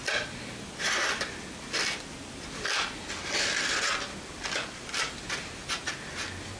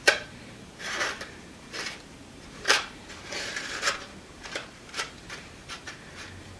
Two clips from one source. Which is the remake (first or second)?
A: second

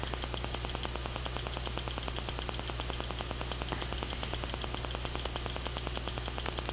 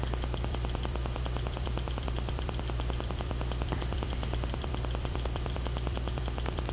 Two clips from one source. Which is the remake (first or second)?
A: second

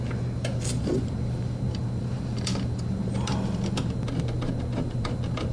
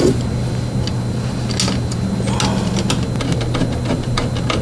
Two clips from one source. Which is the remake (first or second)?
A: first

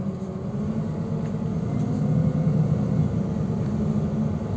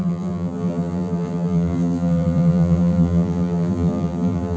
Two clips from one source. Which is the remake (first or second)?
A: second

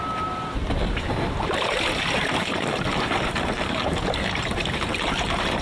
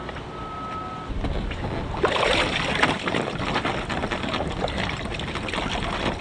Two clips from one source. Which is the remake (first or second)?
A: first